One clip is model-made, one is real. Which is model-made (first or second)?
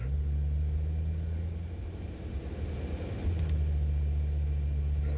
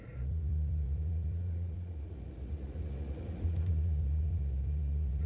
second